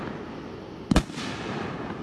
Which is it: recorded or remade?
recorded